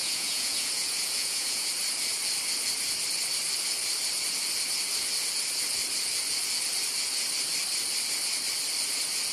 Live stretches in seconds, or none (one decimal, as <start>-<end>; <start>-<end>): 1.7-9.3